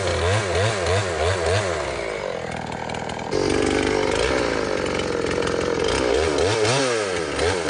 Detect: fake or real real